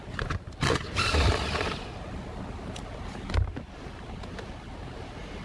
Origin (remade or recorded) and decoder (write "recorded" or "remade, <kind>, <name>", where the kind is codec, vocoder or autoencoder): recorded